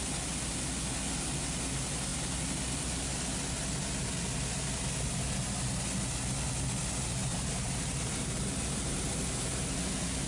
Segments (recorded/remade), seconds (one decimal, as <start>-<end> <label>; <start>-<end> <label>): 0.0-7.3 recorded; 7.3-8.3 remade; 8.3-10.3 recorded